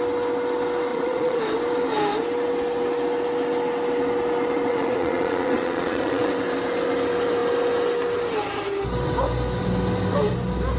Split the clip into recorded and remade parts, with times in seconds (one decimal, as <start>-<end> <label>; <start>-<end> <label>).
0.0-0.9 recorded; 0.9-1.4 remade; 1.4-4.7 recorded; 4.7-6.3 remade; 6.3-10.8 recorded